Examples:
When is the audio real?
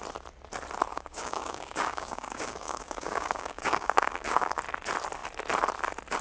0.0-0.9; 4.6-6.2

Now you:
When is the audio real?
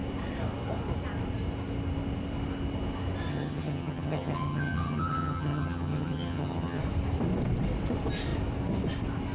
0.0-3.3; 6.8-9.3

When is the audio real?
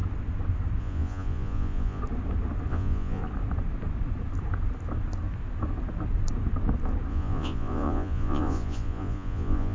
0.0-0.8; 2.0-2.7; 3.2-7.1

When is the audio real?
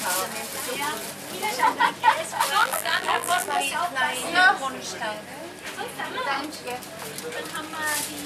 0.0-2.6; 3.6-8.3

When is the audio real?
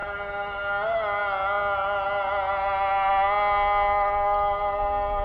0.0-5.2